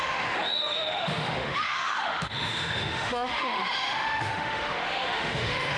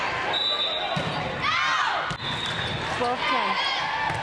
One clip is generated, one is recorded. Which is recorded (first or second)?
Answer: second